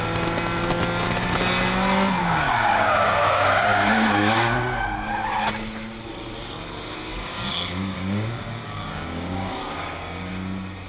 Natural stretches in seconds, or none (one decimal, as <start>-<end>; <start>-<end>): 0.0-2.2; 5.1-7.1; 10.3-10.9